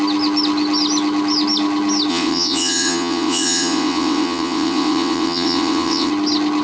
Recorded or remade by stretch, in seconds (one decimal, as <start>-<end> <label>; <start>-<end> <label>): 0.0-2.1 recorded; 2.1-6.1 remade; 6.1-6.6 recorded